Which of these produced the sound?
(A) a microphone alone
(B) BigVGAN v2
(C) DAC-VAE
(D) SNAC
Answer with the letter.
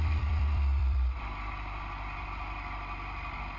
B